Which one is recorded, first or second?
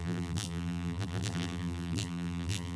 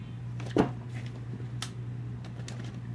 second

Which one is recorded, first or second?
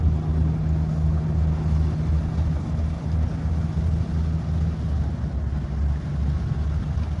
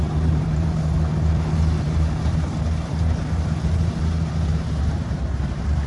first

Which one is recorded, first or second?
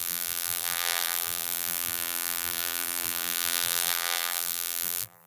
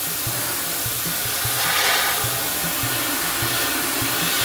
second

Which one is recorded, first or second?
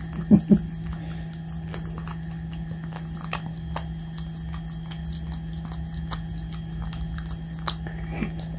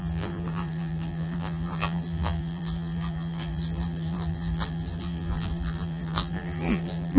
first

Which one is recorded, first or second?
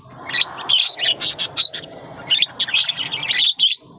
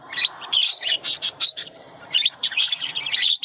first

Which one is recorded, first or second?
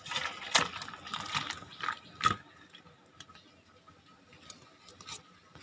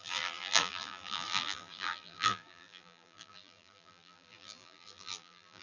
first